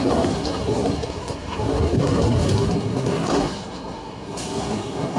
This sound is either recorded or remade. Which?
remade